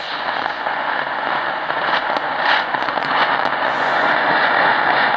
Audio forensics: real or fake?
fake